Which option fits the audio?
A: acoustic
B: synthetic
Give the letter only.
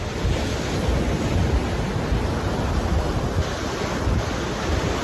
A